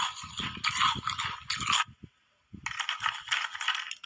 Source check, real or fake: real